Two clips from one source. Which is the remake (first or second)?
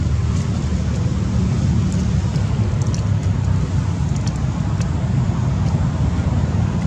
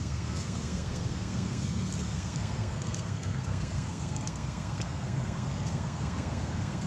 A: second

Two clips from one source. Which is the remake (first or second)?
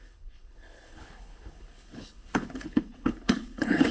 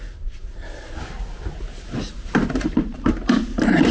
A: first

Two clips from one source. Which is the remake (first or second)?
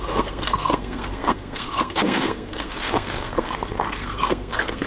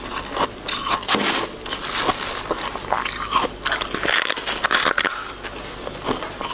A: first